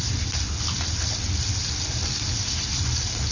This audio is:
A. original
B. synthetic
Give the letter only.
A